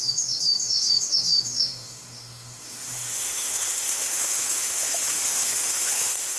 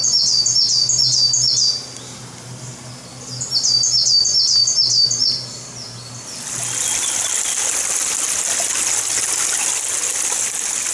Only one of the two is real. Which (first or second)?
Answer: second